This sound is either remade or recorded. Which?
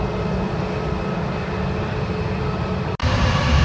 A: recorded